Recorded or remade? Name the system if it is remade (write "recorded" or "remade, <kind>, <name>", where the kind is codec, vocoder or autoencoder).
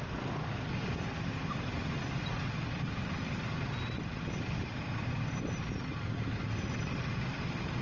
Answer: recorded